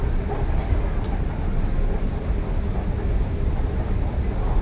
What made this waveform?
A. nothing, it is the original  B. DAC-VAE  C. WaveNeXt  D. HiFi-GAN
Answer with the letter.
A